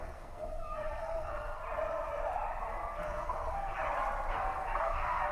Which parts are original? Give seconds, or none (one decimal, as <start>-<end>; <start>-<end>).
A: 1.6-2.7; 3.8-4.3